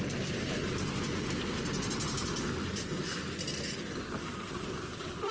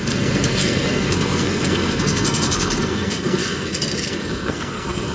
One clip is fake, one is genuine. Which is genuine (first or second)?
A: first